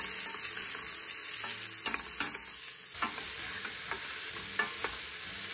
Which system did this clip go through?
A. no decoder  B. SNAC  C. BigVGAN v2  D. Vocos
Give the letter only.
A